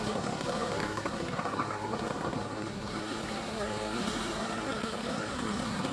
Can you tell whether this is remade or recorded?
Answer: remade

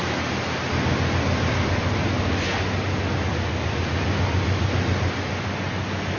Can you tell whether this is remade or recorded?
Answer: recorded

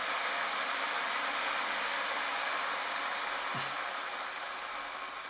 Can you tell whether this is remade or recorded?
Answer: recorded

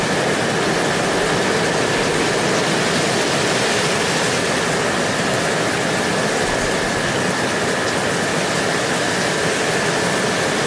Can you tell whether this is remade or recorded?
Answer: recorded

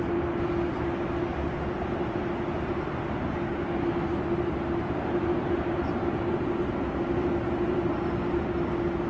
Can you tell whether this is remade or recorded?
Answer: recorded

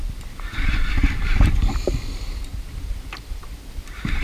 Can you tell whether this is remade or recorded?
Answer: recorded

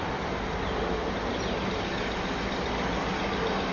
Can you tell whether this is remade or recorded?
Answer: recorded